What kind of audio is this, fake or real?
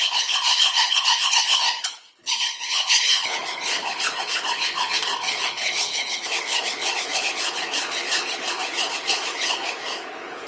fake